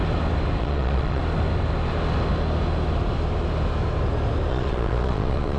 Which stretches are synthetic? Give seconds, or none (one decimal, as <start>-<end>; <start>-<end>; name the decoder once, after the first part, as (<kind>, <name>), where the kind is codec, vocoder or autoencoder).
0.6-1.2 (vocoder, Vocos); 4.5-5.6